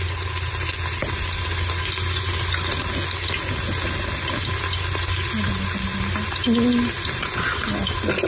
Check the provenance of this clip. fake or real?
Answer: real